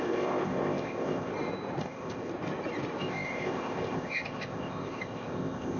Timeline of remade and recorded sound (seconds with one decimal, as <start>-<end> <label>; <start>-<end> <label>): 0.0-1.3 remade; 1.3-1.8 recorded; 1.8-2.3 remade; 2.3-3.0 recorded; 3.0-5.8 remade